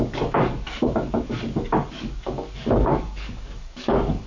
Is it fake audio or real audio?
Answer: fake